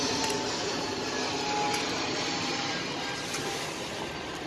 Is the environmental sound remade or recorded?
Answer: recorded